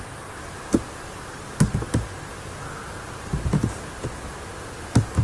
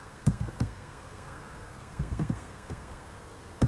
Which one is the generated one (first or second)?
second